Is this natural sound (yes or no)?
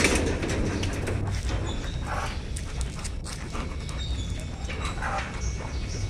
yes